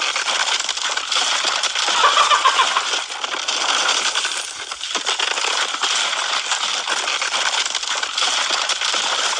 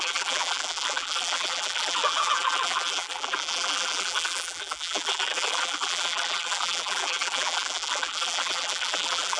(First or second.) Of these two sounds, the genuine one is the first